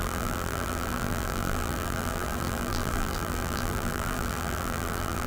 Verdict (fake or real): fake